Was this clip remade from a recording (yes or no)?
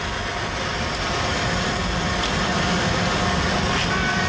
no